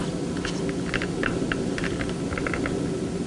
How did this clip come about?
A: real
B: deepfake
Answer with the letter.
A